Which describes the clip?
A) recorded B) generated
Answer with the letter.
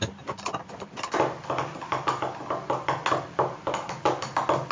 A